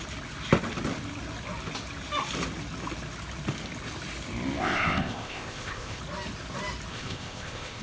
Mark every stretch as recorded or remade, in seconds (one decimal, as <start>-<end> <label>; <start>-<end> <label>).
0.0-4.6 recorded; 4.6-6.0 remade; 6.0-6.9 recorded; 6.9-7.8 remade